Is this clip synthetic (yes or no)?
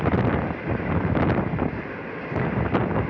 no